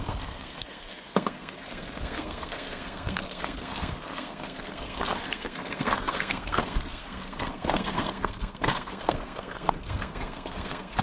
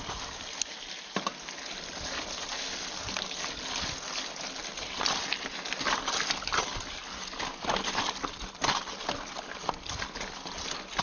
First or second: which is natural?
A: second